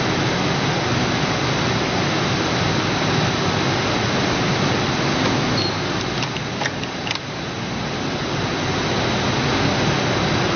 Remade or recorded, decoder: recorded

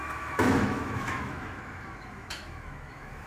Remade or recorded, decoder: remade, autoencoder, DAC-VAE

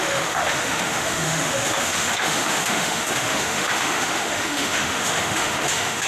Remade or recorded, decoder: remade, autoencoder, DAC-VAE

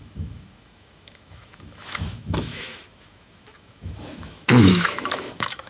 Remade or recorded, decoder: remade, autoencoder, DAC-VAE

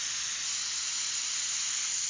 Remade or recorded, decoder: recorded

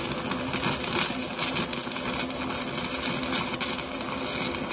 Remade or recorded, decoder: recorded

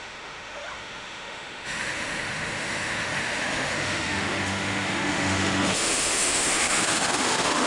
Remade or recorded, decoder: remade, autoencoder, DAC-VAE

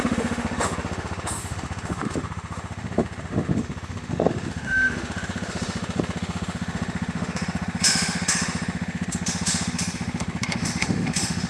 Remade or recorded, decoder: remade, autoencoder, DAC-VAE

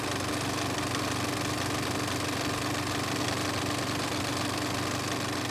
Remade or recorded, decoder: recorded